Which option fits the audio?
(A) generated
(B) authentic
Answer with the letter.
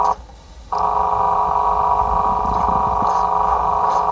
B